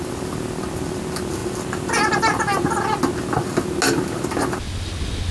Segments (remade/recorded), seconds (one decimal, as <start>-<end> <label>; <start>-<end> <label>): 0.0-5.3 recorded